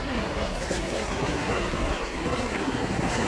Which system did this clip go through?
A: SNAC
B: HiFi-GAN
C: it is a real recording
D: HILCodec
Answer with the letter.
A